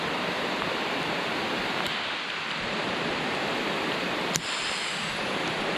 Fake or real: fake